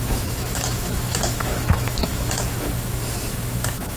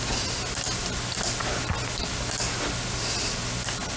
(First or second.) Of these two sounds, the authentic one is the second